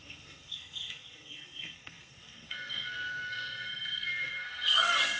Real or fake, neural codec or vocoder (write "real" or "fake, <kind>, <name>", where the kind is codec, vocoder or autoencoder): fake, codec, SNAC